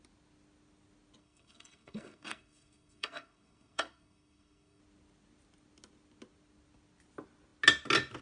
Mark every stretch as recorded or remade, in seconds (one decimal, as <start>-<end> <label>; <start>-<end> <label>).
0.0-1.2 recorded; 1.2-4.8 remade; 4.8-8.2 recorded